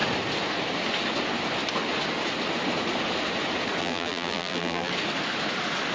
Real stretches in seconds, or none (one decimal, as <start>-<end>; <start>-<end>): 0.0-3.8; 4.9-5.9

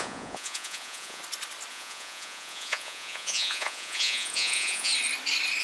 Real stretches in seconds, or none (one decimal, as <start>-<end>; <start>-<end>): 1.2-1.7; 4.9-5.6

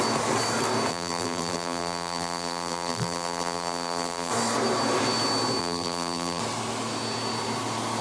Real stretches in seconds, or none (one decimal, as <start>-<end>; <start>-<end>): 0.0-0.9; 4.3-5.6; 6.4-8.0

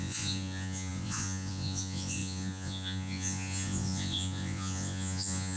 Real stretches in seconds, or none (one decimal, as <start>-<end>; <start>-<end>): none